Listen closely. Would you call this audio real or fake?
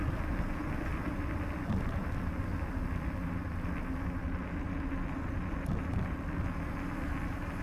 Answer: real